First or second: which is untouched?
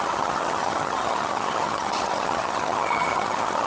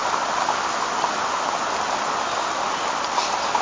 second